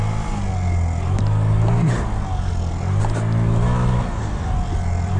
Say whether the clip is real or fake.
real